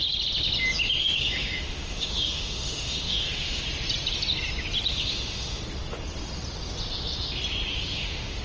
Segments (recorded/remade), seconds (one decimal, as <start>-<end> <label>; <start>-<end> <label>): 0.0-1.0 recorded; 1.0-3.6 remade; 3.6-4.9 recorded; 4.9-5.6 remade; 5.6-7.7 recorded; 7.7-8.4 remade